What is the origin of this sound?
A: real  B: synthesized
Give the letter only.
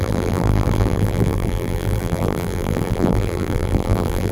B